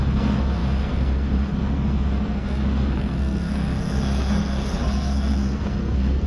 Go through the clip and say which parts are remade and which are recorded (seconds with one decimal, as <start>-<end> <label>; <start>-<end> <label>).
0.0-6.3 remade